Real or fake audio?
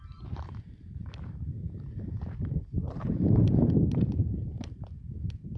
fake